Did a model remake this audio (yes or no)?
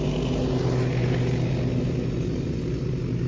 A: no